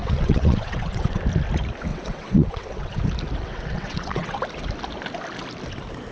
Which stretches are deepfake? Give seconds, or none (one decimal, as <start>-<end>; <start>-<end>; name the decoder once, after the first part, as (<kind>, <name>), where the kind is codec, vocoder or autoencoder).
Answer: 0.0-1.2 (vocoder, WaveNeXt); 1.9-3.0; 3.4-4.4